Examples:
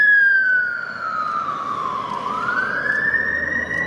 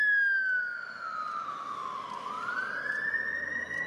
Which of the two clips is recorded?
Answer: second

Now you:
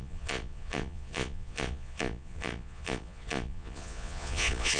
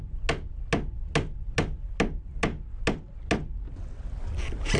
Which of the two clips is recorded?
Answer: second